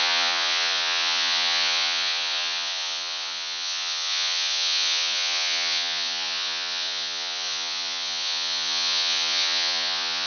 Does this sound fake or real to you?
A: fake